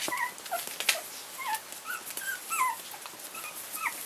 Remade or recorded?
recorded